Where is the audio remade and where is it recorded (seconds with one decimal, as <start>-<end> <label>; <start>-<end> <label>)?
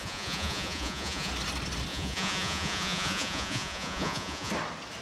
0.0-1.3 remade; 1.3-1.9 recorded; 1.9-4.5 remade; 4.5-5.0 recorded